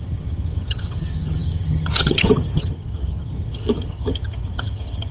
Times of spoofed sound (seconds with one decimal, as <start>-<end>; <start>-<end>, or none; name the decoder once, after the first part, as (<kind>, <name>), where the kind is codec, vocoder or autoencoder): 0.0-5.1 (vocoder, HiFi-GAN)